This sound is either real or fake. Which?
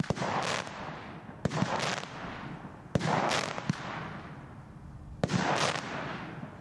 real